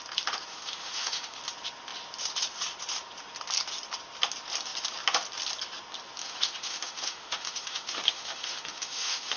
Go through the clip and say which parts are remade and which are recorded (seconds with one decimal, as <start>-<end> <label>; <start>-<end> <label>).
0.0-0.5 recorded; 0.5-1.4 remade; 1.4-6.2 recorded; 6.2-9.4 remade